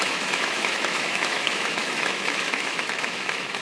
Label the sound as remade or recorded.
remade